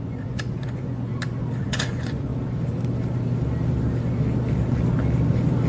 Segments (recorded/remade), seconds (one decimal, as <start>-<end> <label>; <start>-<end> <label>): 0.0-1.1 remade; 1.1-1.6 recorded; 1.6-2.3 remade; 2.3-5.7 recorded